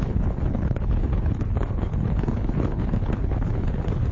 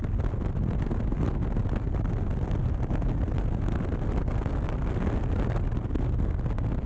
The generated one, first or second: first